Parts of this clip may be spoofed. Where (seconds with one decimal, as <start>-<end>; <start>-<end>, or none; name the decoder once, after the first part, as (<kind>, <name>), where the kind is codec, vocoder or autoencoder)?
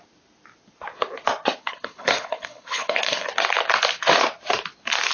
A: 1.6-3.3 (codec, HILCodec)